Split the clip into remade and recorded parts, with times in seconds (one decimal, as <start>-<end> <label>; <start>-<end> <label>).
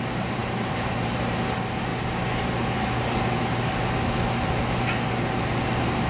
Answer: 0.0-0.4 recorded; 0.4-1.2 remade; 1.2-6.1 recorded